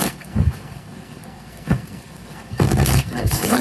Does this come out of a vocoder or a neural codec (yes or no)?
yes